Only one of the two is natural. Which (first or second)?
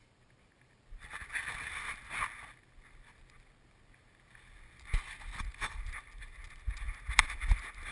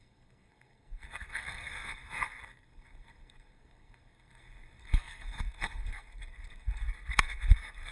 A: first